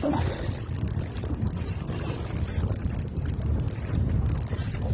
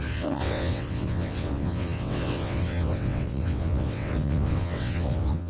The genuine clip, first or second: first